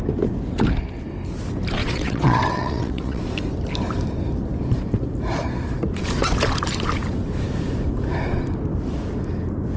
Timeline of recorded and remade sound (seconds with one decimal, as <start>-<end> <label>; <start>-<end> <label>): 0.0-1.8 recorded; 1.8-3.2 remade; 3.2-9.8 recorded